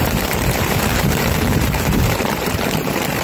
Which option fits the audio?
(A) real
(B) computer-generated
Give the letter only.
B